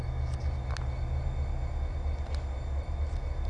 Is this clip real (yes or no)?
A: yes